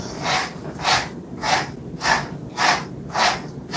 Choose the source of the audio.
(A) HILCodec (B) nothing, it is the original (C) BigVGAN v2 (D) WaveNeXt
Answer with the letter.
B